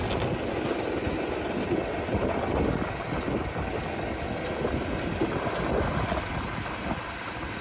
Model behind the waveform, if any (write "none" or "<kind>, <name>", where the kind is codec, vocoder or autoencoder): none